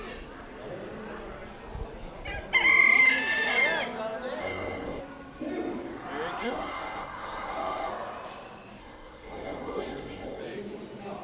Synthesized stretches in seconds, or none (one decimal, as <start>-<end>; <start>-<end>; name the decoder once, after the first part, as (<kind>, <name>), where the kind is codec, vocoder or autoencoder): 4.4-5.0 (codec, SNAC); 6.4-7.9; 8.8-10.4